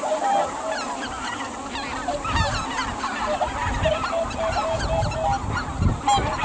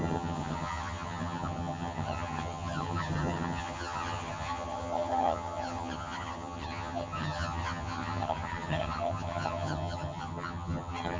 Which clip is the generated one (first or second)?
second